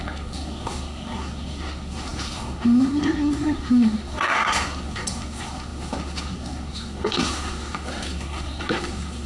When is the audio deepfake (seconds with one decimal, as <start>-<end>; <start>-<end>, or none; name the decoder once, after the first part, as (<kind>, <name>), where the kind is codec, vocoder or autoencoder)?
0.0-9.3 (codec, SNAC)